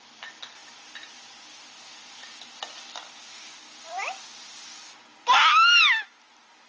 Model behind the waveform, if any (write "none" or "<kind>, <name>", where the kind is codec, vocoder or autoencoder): none